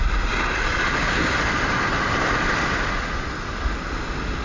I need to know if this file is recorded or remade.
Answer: recorded